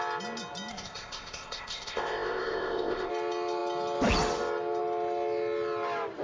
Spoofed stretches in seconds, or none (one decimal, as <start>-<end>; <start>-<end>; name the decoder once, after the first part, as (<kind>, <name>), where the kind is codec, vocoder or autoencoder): 0.7-3.1 (codec, ZipCodec)